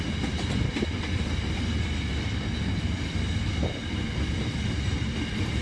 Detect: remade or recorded recorded